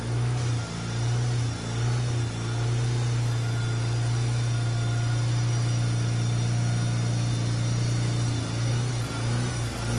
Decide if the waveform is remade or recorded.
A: recorded